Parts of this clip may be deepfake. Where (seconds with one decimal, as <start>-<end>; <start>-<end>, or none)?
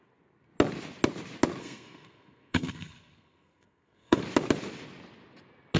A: 1.6-4.2